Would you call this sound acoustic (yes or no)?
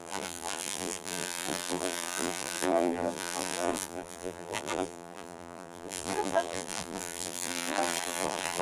no